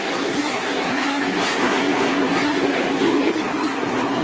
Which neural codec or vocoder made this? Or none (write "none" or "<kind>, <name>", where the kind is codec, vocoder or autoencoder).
codec, SNAC